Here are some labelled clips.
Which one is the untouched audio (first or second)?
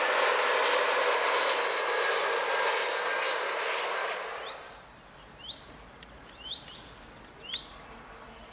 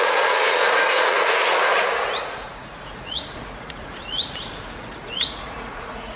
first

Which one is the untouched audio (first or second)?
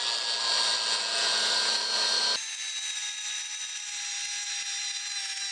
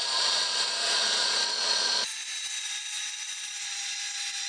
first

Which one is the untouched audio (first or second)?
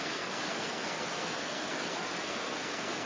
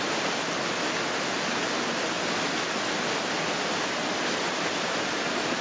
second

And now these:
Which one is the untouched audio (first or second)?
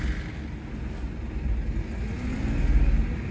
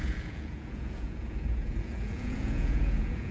first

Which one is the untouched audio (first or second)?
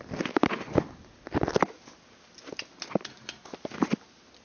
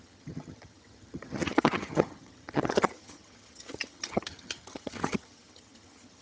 first